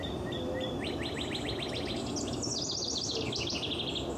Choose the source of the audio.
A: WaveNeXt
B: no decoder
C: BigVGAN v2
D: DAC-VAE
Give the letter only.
B